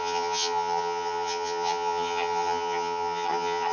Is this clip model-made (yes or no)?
yes